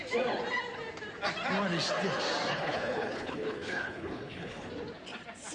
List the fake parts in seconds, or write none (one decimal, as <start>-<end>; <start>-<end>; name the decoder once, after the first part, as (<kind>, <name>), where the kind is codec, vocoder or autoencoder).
2.5-4.7 (codec, HILCodec)